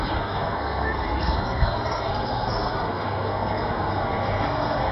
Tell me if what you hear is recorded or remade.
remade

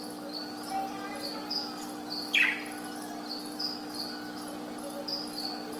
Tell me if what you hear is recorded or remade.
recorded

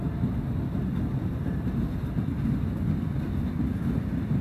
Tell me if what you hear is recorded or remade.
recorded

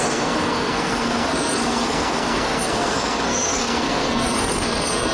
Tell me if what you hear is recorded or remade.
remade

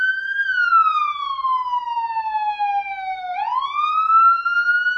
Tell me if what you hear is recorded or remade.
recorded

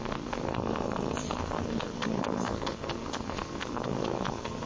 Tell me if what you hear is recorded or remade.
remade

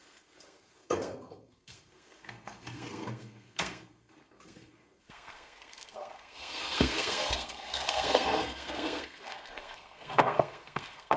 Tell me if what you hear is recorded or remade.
remade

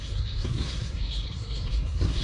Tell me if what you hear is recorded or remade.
remade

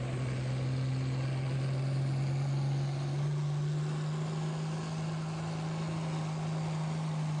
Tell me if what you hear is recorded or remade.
recorded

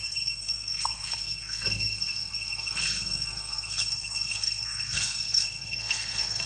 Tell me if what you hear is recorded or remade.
remade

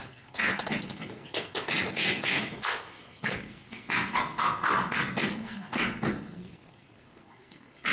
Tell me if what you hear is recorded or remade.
remade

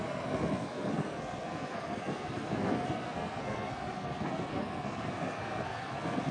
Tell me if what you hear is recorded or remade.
remade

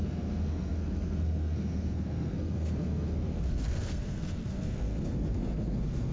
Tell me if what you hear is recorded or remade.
remade